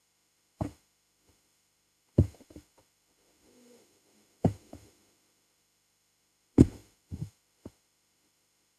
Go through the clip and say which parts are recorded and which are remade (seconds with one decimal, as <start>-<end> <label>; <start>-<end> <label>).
0.0-8.8 remade